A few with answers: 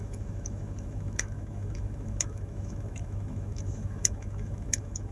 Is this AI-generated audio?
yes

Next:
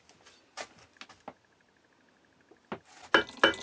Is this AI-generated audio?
no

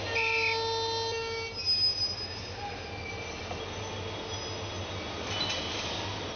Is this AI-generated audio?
no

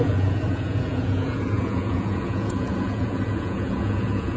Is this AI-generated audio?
yes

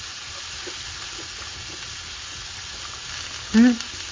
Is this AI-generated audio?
no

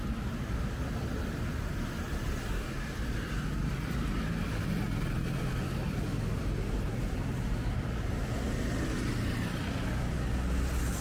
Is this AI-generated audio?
no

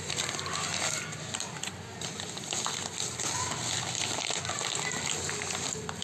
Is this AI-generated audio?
no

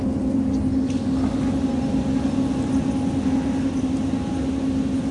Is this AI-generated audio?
no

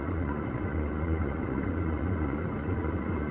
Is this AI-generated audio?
yes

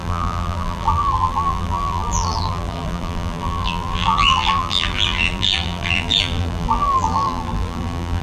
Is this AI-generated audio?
yes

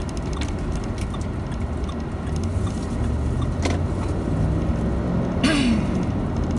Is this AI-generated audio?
no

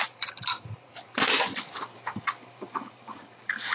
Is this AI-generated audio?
yes